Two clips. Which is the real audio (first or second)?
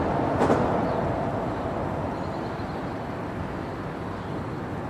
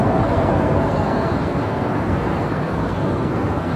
first